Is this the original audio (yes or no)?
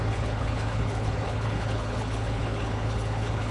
no